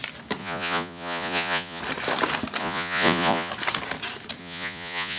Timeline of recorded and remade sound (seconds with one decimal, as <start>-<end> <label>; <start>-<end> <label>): 0.0-0.4 recorded; 0.4-1.8 remade; 1.8-2.6 recorded; 2.6-3.5 remade; 3.5-4.4 recorded; 4.4-5.2 remade